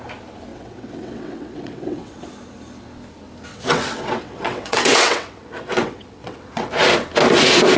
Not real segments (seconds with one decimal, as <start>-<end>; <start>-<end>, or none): 0.5-2.2; 3.5-6.7